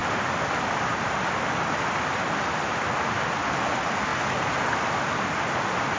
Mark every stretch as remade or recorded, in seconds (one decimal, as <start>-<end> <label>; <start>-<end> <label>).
0.0-6.0 recorded